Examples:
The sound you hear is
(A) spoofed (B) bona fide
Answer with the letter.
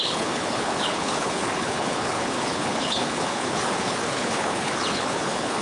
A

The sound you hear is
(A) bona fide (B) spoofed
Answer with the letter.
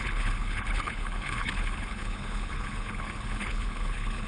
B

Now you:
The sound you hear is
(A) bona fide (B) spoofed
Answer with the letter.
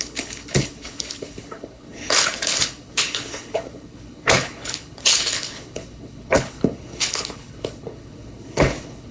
B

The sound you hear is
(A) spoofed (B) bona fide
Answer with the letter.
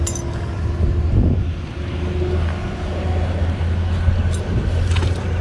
B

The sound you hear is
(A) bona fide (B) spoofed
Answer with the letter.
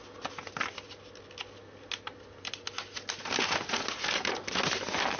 A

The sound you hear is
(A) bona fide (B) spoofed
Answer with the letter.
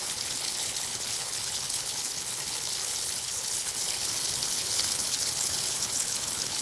B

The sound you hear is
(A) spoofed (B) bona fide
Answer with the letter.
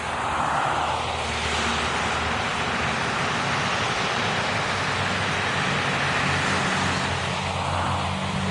B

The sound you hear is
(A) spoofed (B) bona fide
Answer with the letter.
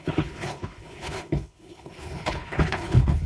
A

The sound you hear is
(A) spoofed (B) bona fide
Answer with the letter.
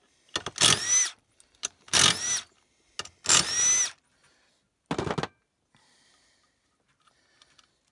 B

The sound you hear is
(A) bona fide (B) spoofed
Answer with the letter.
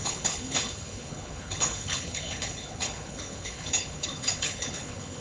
B